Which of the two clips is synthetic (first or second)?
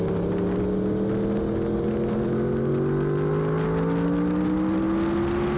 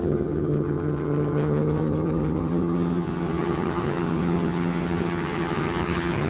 second